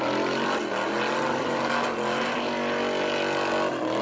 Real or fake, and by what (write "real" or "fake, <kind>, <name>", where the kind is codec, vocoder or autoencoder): real